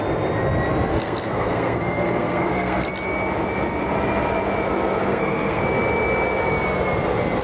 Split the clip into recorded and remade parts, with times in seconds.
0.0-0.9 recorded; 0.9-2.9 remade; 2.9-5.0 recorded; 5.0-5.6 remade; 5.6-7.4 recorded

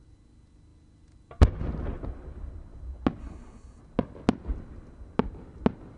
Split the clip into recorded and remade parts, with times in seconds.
0.0-3.2 recorded; 3.2-3.8 remade; 3.8-6.0 recorded

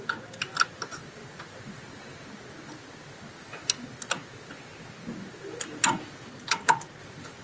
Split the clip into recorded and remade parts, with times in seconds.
0.0-7.4 recorded

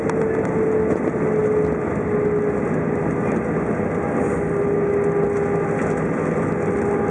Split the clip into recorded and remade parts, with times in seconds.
0.0-7.1 recorded

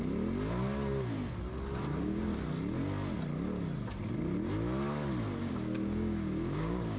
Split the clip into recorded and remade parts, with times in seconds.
0.0-1.8 recorded; 1.8-2.3 remade; 2.3-5.4 recorded; 5.4-7.0 remade

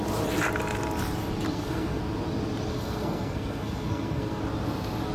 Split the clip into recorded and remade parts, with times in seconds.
0.0-1.5 recorded; 1.5-2.0 remade; 2.0-2.7 recorded; 2.7-4.4 remade; 4.4-5.1 recorded

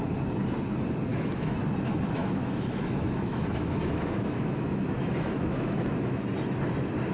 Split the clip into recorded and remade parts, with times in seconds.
0.0-1.1 recorded; 1.1-1.6 remade; 1.6-2.2 recorded; 2.2-6.2 remade; 6.2-7.1 recorded

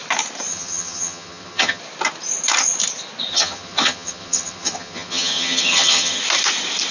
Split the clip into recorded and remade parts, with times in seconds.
0.0-0.5 recorded; 0.5-1.8 remade; 1.8-3.3 recorded; 3.3-6.2 remade; 6.2-6.9 recorded